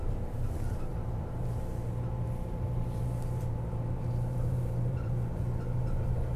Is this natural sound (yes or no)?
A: no